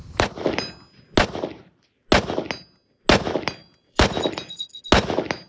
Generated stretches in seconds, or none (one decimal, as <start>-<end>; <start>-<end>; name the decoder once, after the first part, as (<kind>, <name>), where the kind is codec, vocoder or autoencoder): 3.6-4.8 (vocoder, BigVGAN v2)